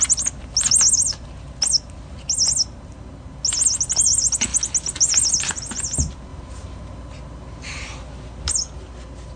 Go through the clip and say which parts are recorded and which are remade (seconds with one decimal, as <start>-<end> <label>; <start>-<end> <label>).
0.0-9.4 recorded